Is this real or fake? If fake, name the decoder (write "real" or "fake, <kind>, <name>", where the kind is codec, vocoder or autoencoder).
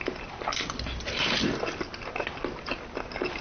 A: real